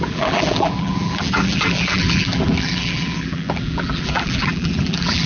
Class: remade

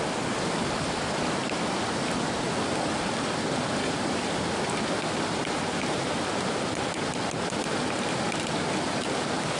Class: recorded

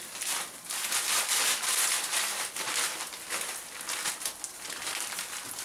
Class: recorded